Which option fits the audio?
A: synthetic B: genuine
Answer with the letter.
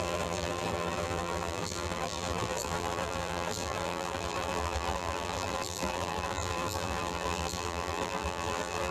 A